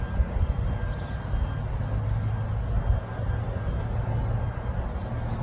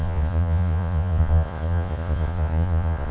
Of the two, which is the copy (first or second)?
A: second